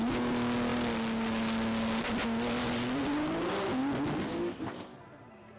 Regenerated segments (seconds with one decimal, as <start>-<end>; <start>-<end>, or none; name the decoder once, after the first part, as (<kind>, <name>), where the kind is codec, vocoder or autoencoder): none